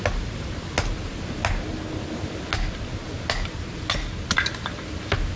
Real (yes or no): yes